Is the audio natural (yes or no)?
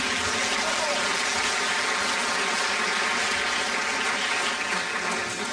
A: yes